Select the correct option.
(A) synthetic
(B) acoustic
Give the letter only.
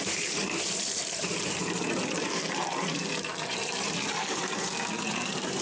A